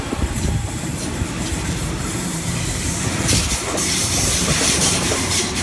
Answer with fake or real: fake